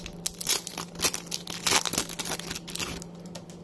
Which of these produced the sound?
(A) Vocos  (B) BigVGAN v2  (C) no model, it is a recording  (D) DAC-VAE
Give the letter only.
C